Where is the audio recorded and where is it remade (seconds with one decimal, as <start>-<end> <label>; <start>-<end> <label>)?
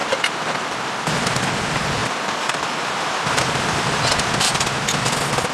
0.0-5.5 recorded